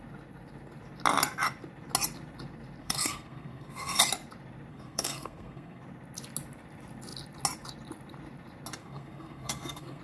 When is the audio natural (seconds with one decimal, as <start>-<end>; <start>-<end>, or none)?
0.0-2.8; 4.0-4.7; 5.8-8.8